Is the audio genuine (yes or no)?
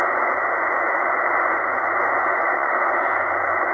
no